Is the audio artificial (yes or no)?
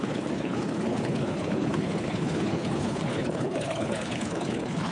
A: yes